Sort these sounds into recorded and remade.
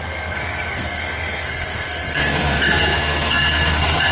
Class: remade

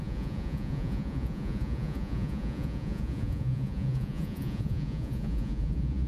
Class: remade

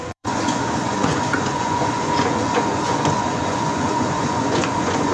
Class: remade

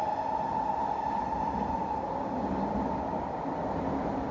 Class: recorded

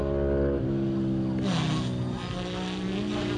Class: recorded